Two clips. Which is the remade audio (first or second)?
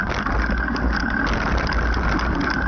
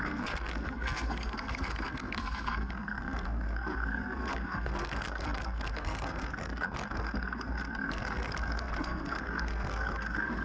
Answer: second